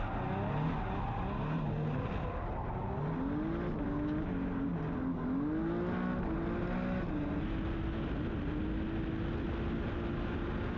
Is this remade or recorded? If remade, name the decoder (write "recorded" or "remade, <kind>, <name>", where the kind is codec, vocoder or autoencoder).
recorded